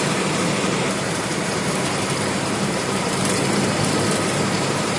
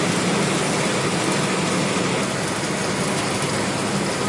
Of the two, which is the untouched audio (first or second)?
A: second